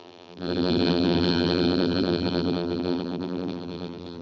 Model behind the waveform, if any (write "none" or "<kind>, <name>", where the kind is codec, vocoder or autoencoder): vocoder, BigVGAN v2